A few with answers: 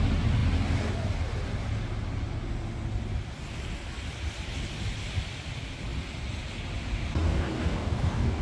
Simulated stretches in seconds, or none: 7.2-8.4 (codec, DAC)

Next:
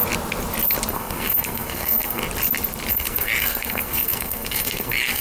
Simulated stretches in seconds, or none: 0.9-2.2 (codec, SNAC); 2.9-5.2